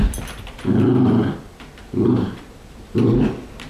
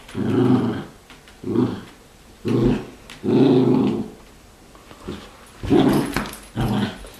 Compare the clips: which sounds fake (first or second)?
first